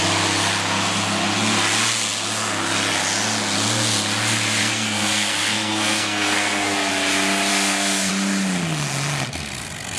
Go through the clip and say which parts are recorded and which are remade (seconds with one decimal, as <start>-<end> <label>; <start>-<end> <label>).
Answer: 0.0-4.6 recorded; 4.6-6.9 remade; 6.9-7.5 recorded; 7.5-8.1 remade; 8.1-10.0 recorded